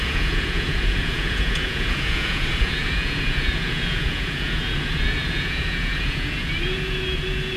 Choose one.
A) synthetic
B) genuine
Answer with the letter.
A